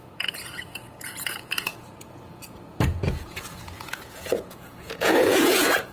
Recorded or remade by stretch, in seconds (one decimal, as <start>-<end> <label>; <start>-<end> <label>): 0.0-5.9 remade